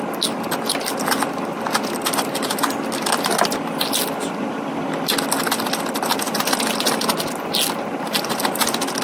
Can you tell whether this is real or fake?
real